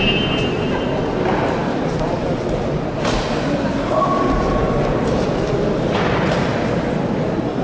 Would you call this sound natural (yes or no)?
yes